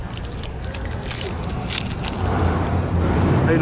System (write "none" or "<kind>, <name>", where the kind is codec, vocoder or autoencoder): none